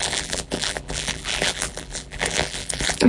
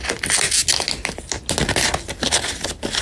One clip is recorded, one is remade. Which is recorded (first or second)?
second